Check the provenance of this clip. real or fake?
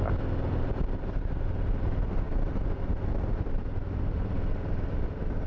real